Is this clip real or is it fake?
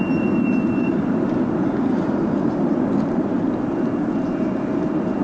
fake